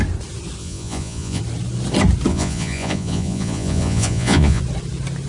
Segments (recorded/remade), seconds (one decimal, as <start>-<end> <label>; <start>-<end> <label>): 0.0-0.6 recorded; 0.6-1.4 remade; 1.4-2.3 recorded; 2.3-4.6 remade; 4.6-5.3 recorded

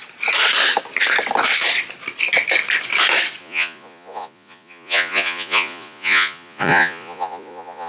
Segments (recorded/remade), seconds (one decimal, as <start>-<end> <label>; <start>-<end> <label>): 0.0-3.4 recorded; 3.4-7.9 remade

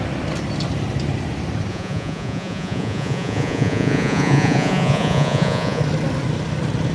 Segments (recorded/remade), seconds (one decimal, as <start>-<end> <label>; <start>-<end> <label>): 0.0-1.7 recorded; 1.7-5.8 remade; 5.8-6.9 recorded

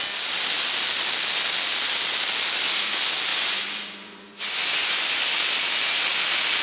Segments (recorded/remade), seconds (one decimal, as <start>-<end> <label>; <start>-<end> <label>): 0.0-3.3 recorded; 3.3-5.2 remade; 5.2-6.6 recorded

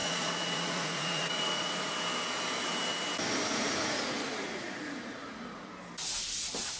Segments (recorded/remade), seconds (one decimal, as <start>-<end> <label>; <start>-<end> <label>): 0.0-1.9 remade; 1.9-3.5 recorded; 3.5-5.7 remade; 5.7-6.8 recorded

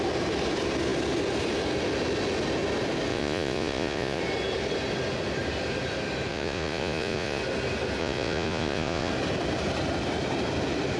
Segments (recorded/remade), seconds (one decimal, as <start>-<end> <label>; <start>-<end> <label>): 0.0-3.1 recorded; 3.1-4.2 remade; 4.2-6.3 recorded; 6.3-7.4 remade; 7.4-8.0 recorded; 8.0-9.1 remade; 9.1-11.0 recorded